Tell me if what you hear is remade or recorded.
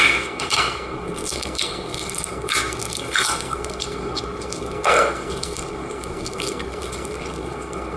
remade